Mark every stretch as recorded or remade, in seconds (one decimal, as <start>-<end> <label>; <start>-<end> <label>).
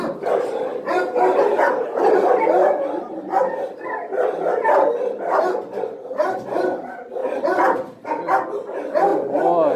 0.0-9.8 recorded